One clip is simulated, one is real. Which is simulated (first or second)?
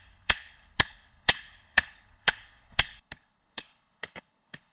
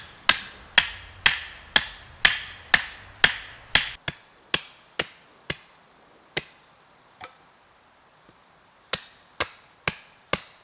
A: first